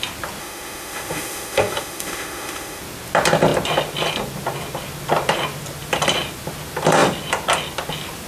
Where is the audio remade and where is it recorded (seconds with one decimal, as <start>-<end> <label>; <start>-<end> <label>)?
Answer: 0.0-0.4 recorded; 0.4-2.8 remade; 2.8-8.3 recorded